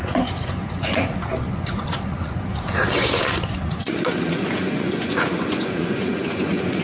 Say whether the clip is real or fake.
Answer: fake